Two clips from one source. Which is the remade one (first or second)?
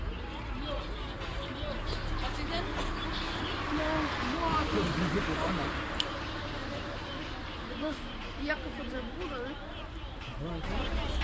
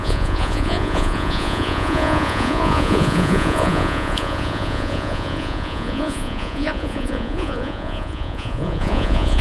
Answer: second